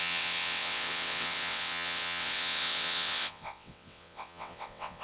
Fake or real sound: fake